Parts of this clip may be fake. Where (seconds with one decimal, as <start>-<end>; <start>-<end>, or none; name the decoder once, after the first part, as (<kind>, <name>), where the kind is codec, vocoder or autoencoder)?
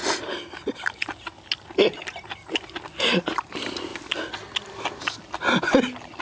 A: none